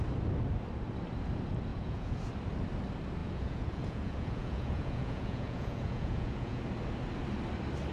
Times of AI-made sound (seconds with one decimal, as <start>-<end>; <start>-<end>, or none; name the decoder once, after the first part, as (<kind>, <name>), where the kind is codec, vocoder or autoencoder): 1.7-2.3 (vocoder, Vocos); 3.2-6.6